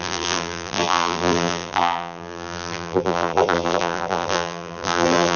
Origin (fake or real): fake